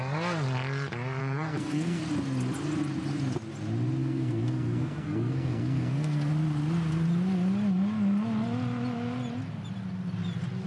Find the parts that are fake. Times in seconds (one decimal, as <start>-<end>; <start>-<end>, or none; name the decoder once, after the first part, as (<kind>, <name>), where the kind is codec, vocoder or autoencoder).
1.2-2.0 (codec, SNAC); 4.0-6.3